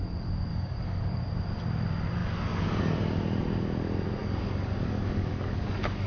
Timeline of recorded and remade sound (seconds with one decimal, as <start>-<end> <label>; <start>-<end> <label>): 0.0-0.5 recorded; 0.5-1.2 remade; 1.2-4.2 recorded; 4.2-6.1 remade